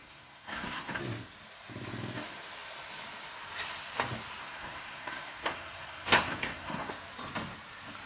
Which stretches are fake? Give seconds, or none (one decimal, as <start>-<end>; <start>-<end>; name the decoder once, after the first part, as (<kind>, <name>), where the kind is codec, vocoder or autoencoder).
0.0-1.0 (codec, SNAC); 4.4-6.9